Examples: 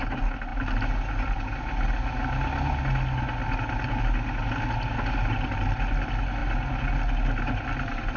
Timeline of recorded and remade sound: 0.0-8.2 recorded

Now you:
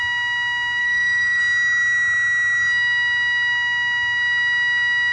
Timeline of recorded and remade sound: 0.0-0.8 recorded; 0.8-1.4 remade; 1.4-5.1 recorded